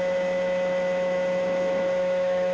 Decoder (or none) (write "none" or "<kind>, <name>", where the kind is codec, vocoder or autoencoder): autoencoder, DAC-VAE